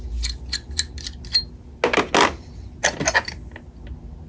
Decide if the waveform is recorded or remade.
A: recorded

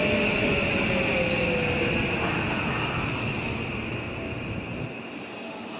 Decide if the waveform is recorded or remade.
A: recorded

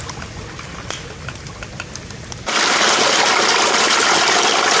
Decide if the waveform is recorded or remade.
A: recorded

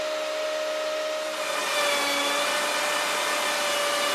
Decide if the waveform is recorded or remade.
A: recorded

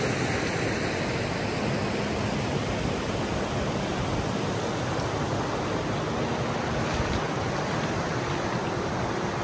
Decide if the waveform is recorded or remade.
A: recorded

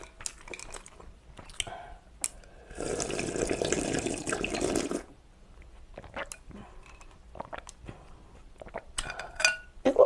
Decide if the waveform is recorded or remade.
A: recorded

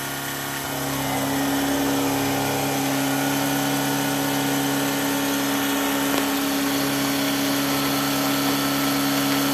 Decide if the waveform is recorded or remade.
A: recorded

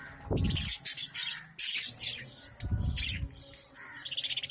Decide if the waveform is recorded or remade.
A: recorded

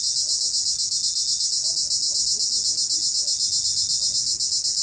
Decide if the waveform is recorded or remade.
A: recorded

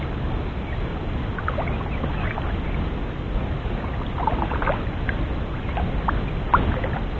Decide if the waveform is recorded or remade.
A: recorded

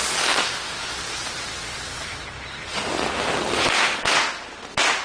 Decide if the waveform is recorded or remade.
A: recorded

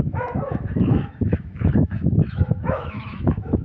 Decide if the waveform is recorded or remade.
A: remade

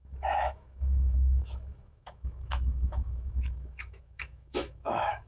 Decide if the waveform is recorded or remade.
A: remade